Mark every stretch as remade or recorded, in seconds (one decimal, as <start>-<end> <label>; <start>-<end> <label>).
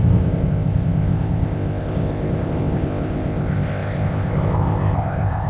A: 0.0-5.5 remade